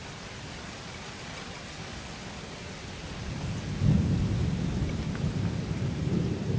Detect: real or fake real